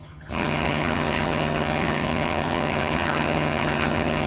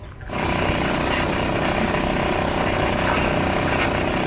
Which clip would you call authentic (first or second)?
second